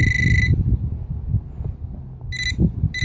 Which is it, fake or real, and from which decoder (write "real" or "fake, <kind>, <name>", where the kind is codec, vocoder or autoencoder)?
real